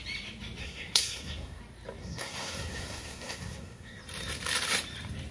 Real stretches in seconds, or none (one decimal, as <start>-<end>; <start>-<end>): 0.0-0.6; 1.6-2.0; 4.0-5.3